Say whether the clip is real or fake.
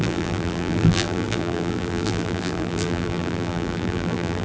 fake